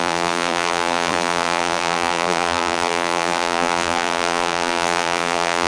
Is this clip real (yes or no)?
no